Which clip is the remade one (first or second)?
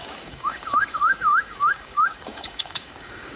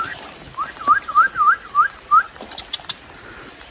first